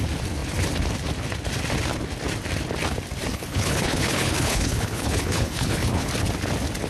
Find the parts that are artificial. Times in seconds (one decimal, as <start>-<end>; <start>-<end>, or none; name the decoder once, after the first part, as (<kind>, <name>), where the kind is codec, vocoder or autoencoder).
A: 3.3-6.1 (codec, HILCodec)